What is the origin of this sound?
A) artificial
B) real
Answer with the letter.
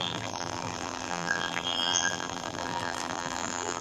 A